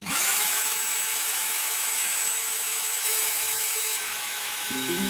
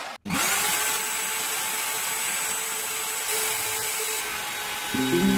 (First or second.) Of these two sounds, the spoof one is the first